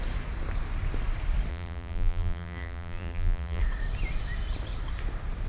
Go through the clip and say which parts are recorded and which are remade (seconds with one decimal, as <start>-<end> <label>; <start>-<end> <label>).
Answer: 0.0-1.5 recorded; 1.5-3.6 remade; 3.6-5.5 recorded